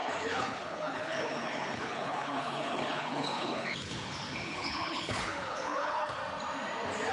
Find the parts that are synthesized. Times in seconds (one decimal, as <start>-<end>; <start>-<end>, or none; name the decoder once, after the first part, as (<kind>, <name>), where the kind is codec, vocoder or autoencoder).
0.0-6.2 (codec, HILCodec)